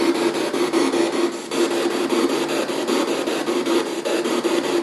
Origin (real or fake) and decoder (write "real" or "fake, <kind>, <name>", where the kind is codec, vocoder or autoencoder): real